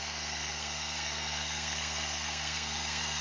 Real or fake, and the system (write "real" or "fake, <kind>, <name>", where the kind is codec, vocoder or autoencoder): fake, codec, SNAC